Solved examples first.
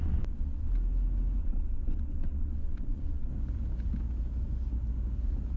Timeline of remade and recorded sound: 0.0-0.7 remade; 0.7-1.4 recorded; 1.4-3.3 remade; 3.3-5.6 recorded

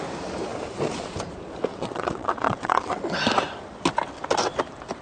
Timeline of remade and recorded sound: 0.0-1.7 recorded; 1.7-3.0 remade; 3.0-5.0 recorded

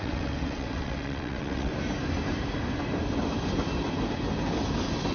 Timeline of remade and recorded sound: 0.0-1.7 remade; 1.7-5.1 recorded

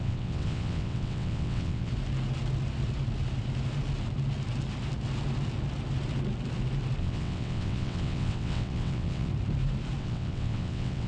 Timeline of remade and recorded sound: 0.0-1.9 remade; 1.9-7.0 recorded; 7.0-9.3 remade; 9.3-10.0 recorded; 10.0-11.1 remade

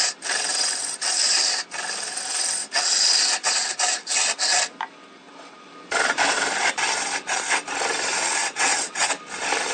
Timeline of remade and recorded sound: 0.0-8.4 recorded; 8.4-9.1 remade; 9.1-9.7 recorded

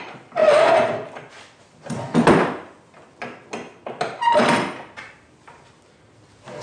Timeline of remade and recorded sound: 0.0-6.6 recorded

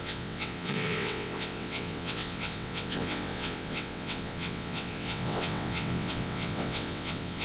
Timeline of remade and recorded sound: 0.0-7.4 remade

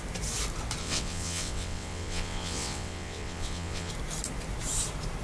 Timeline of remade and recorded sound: 0.0-0.8 recorded; 0.8-3.9 remade; 3.9-5.2 recorded